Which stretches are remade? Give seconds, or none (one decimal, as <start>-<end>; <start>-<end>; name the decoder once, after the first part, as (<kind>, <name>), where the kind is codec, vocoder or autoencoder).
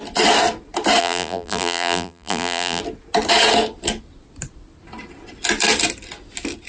1.0-2.8 (vocoder, BigVGAN v2)